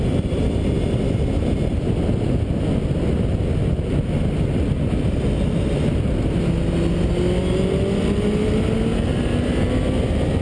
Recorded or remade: recorded